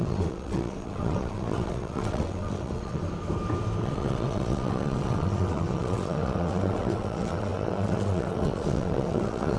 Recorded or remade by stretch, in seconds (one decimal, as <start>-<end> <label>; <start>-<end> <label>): 0.0-3.0 remade; 3.0-3.8 recorded; 3.8-9.6 remade